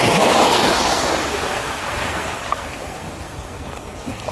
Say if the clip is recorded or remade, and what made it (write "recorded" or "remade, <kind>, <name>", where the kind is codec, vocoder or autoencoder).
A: remade, codec, SNAC